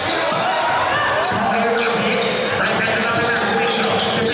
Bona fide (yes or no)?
yes